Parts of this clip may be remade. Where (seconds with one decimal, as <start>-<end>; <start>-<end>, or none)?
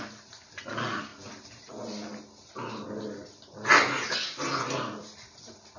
none